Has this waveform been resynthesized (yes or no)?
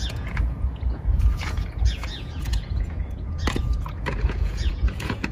yes